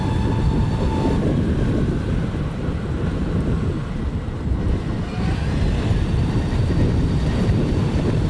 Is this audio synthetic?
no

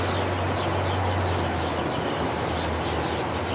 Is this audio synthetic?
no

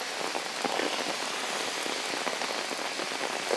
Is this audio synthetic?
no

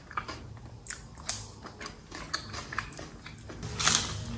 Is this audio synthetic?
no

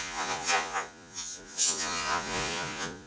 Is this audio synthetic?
yes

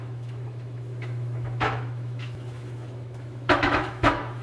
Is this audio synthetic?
yes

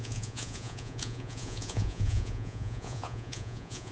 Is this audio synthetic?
yes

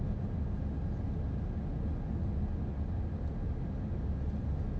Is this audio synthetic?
no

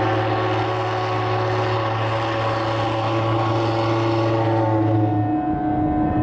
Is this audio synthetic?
no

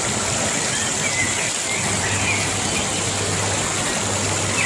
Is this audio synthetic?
no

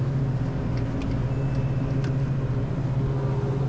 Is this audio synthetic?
no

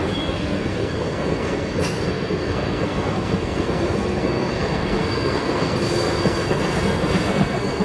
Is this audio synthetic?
yes